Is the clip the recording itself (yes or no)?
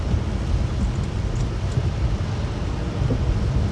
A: yes